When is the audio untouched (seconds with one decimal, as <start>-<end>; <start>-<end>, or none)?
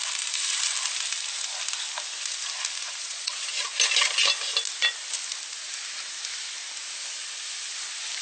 0.0-3.0; 3.5-8.2